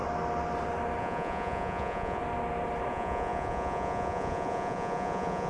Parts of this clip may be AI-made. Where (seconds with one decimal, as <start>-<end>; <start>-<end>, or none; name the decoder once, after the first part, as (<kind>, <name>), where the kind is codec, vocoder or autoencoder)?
1.0-2.2 (vocoder, Vocos); 2.9-5.5